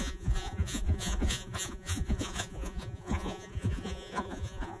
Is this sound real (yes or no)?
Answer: no